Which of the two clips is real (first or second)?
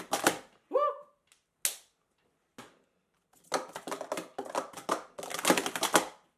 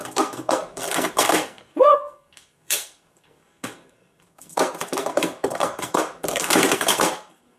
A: first